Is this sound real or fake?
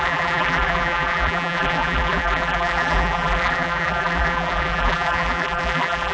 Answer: fake